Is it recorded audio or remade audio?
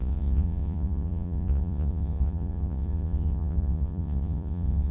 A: remade